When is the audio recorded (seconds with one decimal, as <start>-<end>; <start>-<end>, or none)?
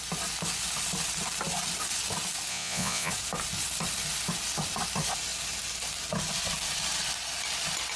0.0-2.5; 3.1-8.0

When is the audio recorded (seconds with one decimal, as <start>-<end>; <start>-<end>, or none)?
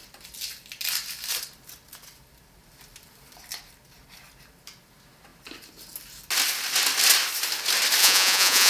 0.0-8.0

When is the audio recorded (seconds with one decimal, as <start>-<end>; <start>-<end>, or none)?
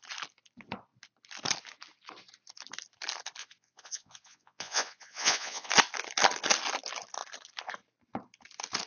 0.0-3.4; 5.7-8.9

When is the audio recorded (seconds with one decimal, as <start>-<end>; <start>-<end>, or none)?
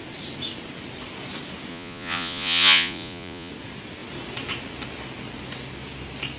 0.0-1.7; 3.5-6.4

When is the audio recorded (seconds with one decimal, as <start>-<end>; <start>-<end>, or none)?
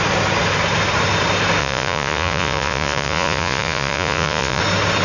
0.0-1.6; 4.6-5.0